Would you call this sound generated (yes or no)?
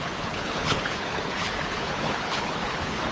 yes